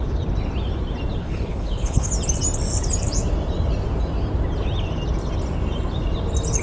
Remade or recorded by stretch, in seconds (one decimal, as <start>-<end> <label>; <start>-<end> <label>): 0.0-1.2 recorded; 1.2-2.1 remade; 2.1-6.6 recorded